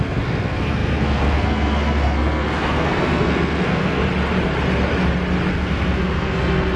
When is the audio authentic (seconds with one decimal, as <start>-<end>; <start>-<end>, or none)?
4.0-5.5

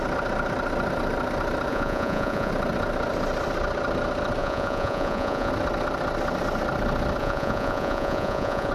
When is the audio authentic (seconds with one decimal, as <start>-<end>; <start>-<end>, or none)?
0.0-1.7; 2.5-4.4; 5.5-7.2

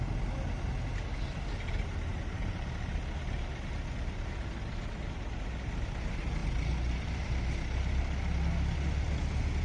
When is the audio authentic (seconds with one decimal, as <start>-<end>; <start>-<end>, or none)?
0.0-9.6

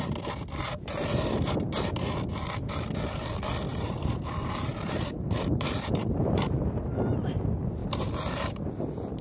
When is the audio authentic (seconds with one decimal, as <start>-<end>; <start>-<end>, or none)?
0.0-3.7; 7.1-9.2

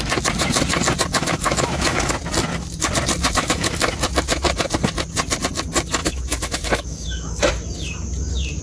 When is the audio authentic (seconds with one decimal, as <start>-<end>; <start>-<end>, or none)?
0.0-1.1; 2.1-3.2; 3.9-6.0; 7.5-8.6

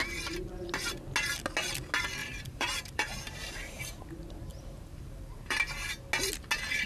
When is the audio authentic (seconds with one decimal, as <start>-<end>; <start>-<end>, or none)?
0.0-2.2; 4.1-4.5; 5.9-6.9

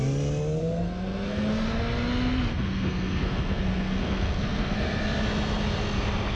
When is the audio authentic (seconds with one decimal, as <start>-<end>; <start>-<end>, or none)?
0.0-0.6; 1.5-2.5; 5.0-6.4